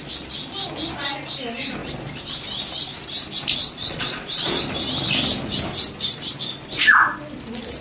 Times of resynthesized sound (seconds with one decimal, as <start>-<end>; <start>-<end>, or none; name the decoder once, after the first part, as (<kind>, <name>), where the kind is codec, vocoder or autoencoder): 3.6-4.6 (vocoder, Vocos)